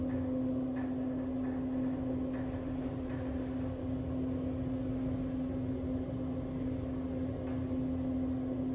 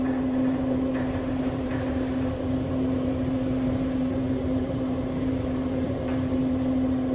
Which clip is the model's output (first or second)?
second